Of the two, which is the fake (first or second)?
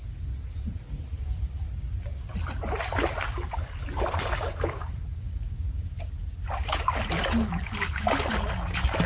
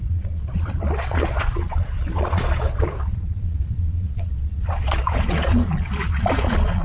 second